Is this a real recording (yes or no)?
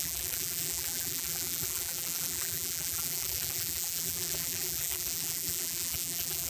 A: no